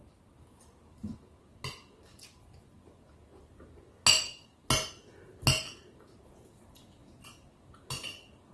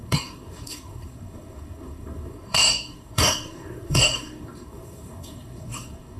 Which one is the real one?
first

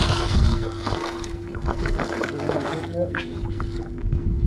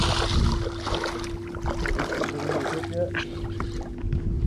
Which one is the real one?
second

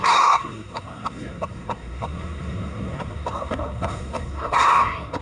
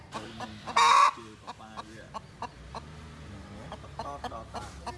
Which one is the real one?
second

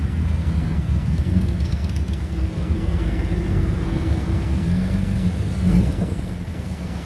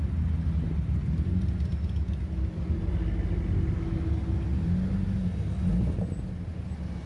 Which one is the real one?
second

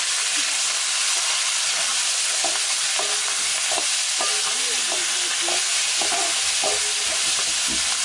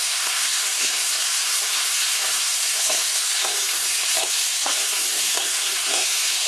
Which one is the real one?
first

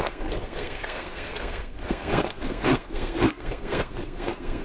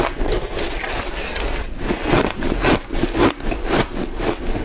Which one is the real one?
second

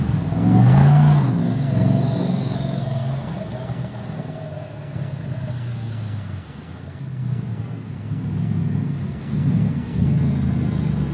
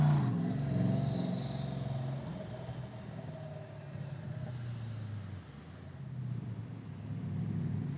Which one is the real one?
second